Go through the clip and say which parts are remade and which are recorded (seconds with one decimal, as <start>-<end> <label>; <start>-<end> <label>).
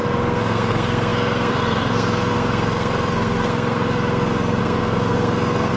0.0-5.8 remade